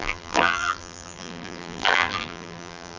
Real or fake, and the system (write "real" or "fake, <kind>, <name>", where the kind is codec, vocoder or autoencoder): fake, vocoder, BigVGAN v2